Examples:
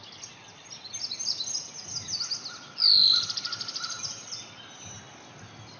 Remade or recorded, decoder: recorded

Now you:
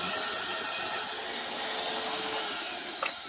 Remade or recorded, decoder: recorded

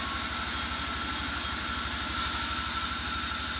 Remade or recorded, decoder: recorded